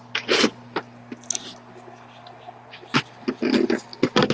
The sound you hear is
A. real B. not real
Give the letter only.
A